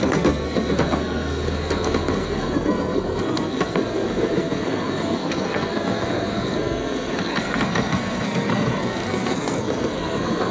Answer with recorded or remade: remade